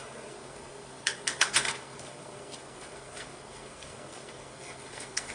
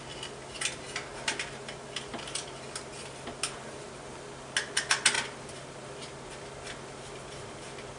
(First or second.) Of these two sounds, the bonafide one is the second